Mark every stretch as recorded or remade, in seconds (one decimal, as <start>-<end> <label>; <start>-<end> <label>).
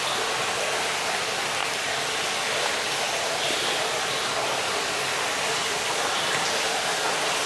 0.0-7.5 recorded